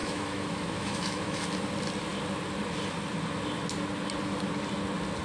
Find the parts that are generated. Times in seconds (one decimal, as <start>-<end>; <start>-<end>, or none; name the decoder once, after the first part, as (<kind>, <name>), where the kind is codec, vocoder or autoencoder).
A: 0.0-1.4 (autoencoder, DAC-VAE)